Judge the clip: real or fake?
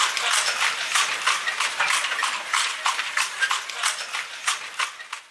real